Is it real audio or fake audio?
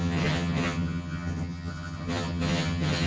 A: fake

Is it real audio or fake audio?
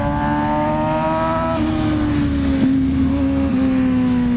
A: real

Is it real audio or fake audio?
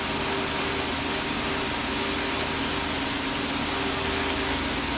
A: real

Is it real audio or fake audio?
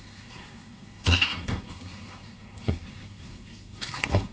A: fake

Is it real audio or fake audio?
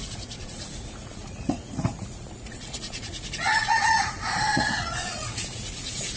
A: fake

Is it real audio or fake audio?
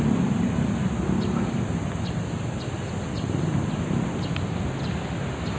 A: real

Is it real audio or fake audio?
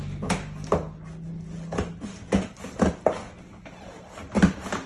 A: real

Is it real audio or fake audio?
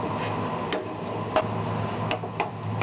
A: real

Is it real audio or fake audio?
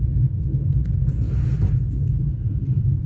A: real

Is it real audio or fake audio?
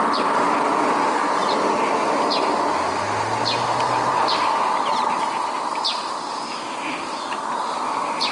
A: real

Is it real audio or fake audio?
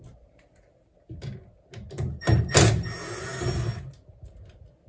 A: real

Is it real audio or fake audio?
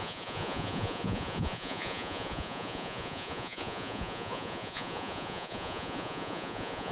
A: fake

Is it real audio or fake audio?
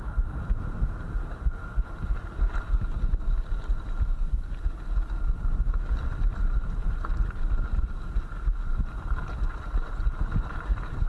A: real